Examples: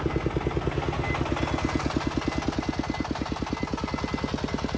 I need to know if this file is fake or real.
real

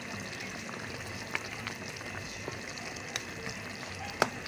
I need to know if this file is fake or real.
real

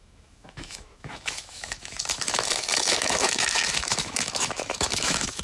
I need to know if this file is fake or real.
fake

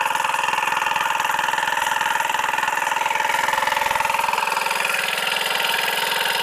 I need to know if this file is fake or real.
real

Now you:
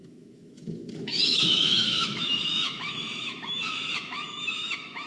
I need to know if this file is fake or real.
fake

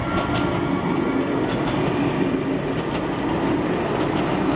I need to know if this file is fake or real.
real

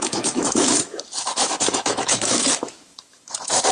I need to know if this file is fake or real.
fake